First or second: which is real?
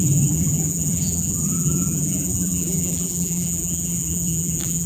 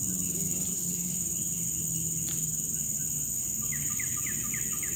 second